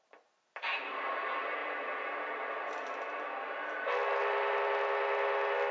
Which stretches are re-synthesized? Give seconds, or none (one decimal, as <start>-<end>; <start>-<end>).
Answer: none